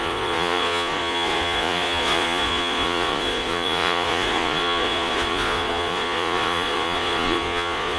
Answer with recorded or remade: remade